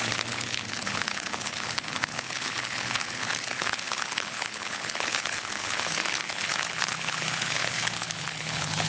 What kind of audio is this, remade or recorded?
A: remade